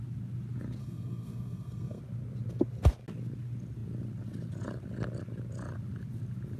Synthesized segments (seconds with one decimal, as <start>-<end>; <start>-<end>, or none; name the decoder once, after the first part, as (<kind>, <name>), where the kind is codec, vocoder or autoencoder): 0.8-2.0 (codec, SNAC)